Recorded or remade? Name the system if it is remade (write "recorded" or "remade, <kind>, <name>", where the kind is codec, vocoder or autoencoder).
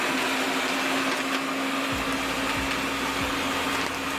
recorded